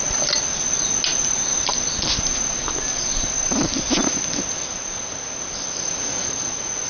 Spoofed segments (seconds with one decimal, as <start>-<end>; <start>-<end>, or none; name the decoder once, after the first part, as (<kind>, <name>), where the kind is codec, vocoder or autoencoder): none